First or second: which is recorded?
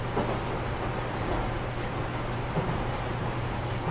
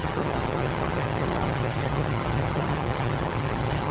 first